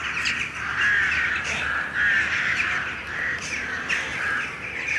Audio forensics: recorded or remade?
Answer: recorded